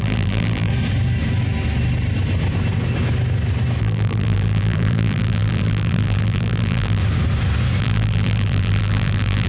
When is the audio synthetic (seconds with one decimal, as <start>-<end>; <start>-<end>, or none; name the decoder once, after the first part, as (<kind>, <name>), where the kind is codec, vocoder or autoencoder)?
0.0-0.7 (vocoder, BigVGAN v2); 3.8-7.0; 7.8-9.5

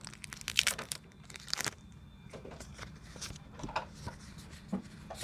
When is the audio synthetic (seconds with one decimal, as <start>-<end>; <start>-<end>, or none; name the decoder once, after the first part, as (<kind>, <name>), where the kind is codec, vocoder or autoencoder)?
0.5-3.6 (vocoder, BigVGAN v2)

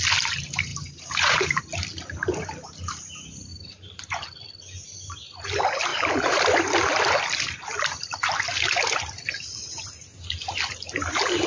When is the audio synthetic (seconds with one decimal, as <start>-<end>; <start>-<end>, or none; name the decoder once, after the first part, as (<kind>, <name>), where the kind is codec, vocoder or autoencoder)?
0.7-1.6 (vocoder, BigVGAN v2); 3.5-4.2

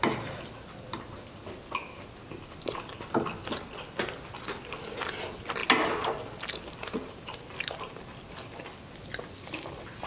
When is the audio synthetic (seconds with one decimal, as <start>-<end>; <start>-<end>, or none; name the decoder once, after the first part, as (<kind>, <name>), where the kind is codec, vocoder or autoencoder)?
none

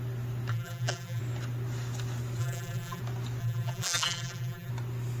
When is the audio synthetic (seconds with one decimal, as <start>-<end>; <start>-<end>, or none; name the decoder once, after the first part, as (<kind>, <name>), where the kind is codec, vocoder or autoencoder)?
0.5-1.2 (vocoder, BigVGAN v2); 2.4-3.0; 3.4-4.7

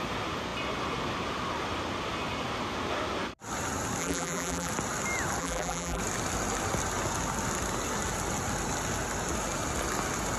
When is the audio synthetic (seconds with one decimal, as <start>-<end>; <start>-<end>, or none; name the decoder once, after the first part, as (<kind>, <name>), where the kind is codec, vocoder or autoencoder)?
4.0-4.7 (vocoder, BigVGAN v2); 5.4-6.0

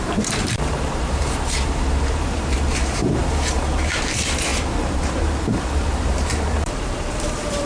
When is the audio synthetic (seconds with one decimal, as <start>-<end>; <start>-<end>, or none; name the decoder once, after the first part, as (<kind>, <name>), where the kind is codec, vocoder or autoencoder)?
0.0-7.7 (vocoder, BigVGAN v2)

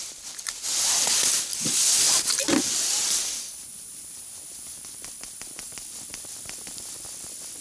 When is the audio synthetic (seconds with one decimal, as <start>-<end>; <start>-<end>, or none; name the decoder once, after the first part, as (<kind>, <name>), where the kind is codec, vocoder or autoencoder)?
0.0-1.5 (vocoder, BigVGAN v2); 2.4-7.6